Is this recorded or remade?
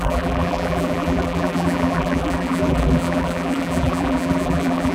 remade